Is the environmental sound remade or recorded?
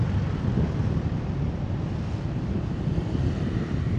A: recorded